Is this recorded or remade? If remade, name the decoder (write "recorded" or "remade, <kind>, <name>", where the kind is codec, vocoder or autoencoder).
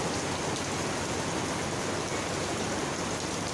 recorded